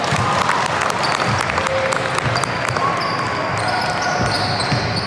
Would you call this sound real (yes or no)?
yes